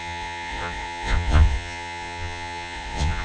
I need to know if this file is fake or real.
fake